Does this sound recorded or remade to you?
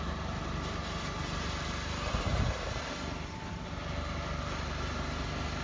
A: recorded